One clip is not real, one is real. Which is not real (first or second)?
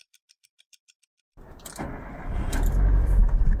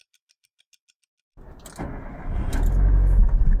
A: first